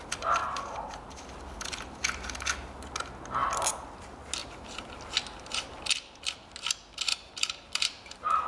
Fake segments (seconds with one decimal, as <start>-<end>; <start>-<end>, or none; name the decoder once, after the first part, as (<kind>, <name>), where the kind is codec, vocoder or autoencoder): 4.4-5.0 (vocoder, BigVGAN v2); 7.1-8.5